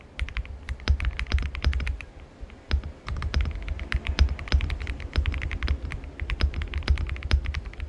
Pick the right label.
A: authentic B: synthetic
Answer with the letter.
B